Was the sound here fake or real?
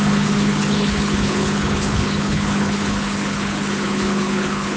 fake